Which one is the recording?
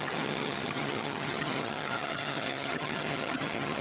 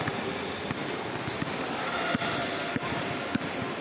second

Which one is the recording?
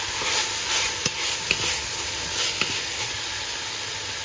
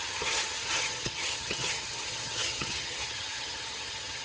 first